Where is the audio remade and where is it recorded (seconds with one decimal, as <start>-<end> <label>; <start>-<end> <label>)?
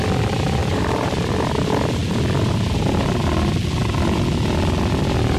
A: 0.0-0.6 recorded; 0.6-1.5 remade; 1.5-5.4 recorded